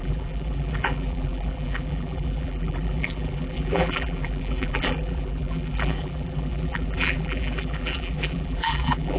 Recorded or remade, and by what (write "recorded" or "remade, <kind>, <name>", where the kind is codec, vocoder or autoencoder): remade, vocoder, BigVGAN v2